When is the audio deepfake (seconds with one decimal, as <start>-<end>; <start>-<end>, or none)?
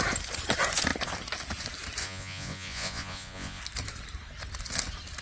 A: 2.0-3.6